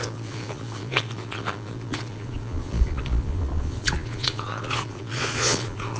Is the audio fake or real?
fake